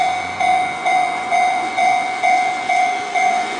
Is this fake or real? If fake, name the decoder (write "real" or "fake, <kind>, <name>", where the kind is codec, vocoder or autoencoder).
fake, vocoder, Vocos